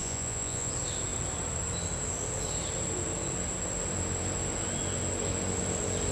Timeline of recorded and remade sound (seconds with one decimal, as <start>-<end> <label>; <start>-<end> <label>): 0.0-0.7 remade; 0.7-6.1 recorded